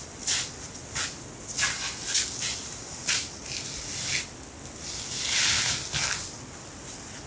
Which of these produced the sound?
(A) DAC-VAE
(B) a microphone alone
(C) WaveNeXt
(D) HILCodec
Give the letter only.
B